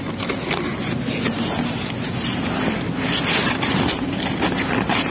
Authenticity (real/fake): real